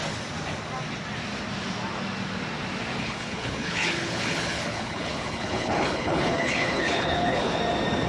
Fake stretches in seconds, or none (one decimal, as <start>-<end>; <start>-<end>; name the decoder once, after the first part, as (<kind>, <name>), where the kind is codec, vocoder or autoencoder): 3.0-7.6 (codec, HILCodec)